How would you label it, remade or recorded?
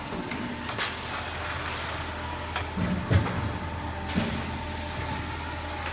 recorded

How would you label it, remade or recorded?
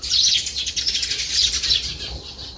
recorded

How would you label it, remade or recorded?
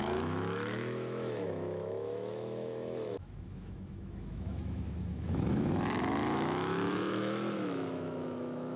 remade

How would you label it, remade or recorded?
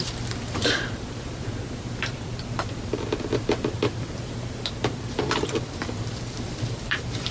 remade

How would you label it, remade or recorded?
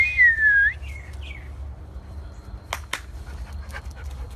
recorded